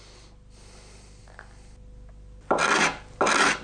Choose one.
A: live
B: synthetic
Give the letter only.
A